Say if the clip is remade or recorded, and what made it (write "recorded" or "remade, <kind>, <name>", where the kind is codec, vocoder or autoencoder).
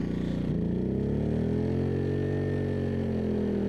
recorded